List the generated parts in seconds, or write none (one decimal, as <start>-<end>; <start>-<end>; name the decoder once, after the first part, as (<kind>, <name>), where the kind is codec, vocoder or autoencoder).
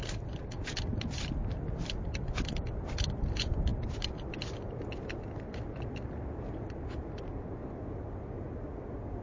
0.9-3.0 (vocoder, BigVGAN v2); 5.5-7.3